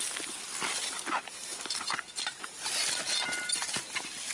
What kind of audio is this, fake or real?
real